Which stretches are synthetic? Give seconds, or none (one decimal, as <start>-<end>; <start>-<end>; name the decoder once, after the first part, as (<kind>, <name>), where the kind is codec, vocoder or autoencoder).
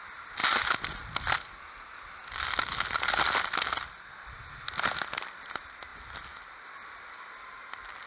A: none